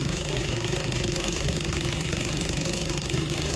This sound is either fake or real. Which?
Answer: fake